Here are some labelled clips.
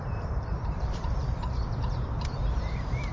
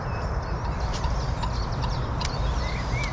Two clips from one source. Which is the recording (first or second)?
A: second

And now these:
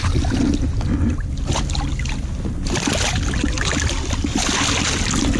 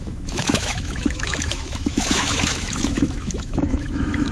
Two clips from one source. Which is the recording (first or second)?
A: first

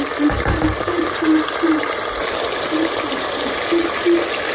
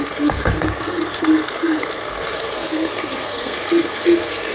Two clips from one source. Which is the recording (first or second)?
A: first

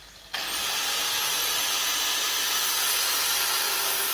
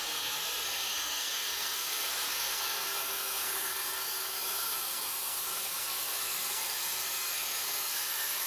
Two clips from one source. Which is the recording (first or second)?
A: first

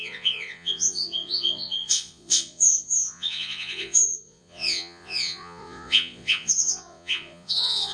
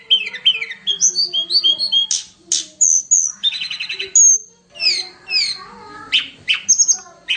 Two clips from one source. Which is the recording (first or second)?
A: second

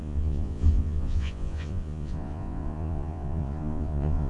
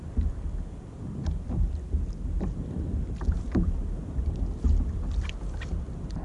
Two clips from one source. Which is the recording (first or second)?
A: second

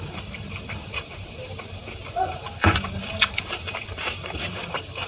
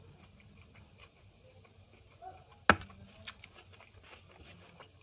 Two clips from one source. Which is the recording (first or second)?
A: second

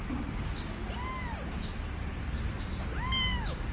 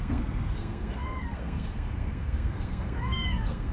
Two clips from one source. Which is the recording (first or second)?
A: first